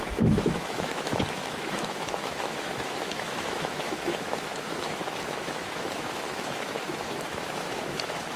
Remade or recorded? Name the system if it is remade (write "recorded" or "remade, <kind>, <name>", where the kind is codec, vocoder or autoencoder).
remade, autoencoder, DAC-VAE